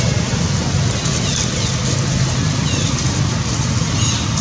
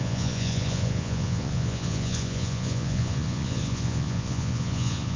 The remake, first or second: second